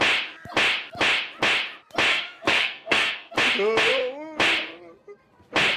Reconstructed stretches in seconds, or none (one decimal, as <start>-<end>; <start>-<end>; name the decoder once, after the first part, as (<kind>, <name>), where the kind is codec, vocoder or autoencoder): 2.1-3.3 (codec, SNAC)